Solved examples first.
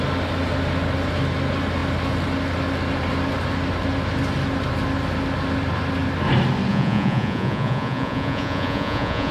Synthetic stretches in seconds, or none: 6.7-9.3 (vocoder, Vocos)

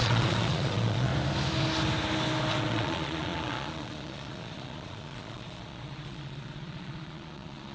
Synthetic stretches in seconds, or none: 0.0-1.1 (vocoder, Vocos); 2.5-7.7

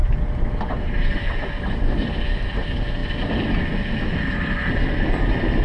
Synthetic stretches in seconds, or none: none